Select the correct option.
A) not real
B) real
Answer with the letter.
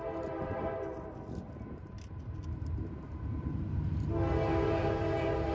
B